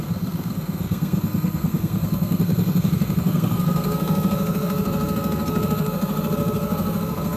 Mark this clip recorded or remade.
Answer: remade